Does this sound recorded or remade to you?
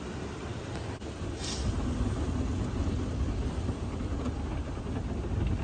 recorded